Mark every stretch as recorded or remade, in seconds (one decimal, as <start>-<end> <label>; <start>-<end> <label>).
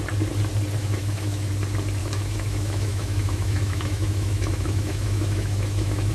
0.0-0.8 recorded; 0.8-1.5 remade; 1.5-2.0 recorded; 2.0-6.1 remade